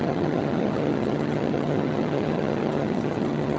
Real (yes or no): no